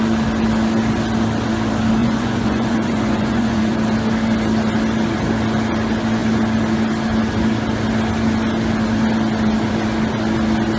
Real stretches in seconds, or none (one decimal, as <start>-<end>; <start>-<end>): 0.0-2.0; 3.8-10.8